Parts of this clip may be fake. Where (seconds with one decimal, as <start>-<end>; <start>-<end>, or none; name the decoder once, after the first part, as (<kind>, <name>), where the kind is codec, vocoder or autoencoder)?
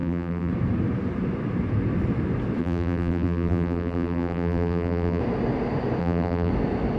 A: 0.0-0.5 (vocoder, BigVGAN v2); 2.6-5.2; 6.0-6.5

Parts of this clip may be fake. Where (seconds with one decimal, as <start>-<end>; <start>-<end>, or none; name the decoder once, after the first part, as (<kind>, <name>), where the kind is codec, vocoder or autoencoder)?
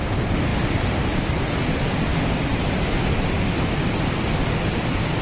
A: 2.1-2.7 (vocoder, BigVGAN v2)